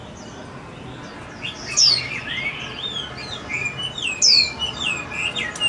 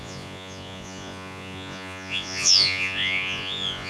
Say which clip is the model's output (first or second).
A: second